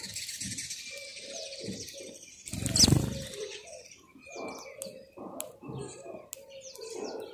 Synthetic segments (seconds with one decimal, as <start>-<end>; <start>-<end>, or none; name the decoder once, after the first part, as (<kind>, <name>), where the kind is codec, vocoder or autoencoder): none